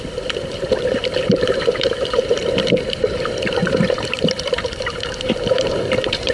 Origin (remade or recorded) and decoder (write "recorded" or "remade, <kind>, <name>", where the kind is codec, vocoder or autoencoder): remade, vocoder, BigVGAN v2